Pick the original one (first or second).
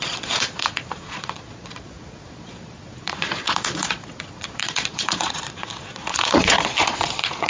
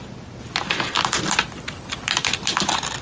second